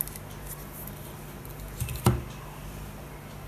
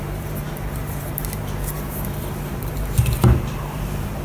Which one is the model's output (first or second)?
second